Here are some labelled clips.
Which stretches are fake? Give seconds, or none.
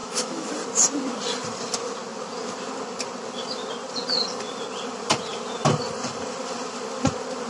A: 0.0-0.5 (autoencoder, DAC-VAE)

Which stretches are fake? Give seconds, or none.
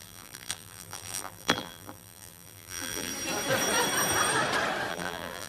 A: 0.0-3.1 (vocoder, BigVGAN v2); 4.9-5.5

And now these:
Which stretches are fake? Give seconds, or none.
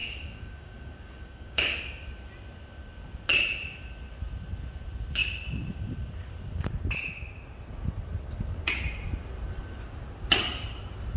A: 0.0-1.8 (codec, DAC)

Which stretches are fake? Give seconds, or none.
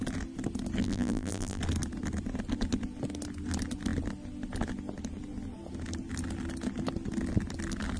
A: 0.8-1.6 (vocoder, BigVGAN v2)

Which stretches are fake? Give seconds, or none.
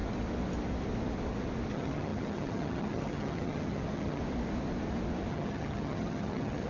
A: 1.7-4.2 (vocoder, HiFi-GAN); 5.3-6.7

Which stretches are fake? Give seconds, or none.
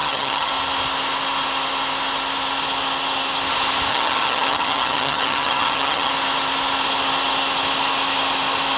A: 0.0-0.5 (vocoder, HiFi-GAN); 3.9-6.1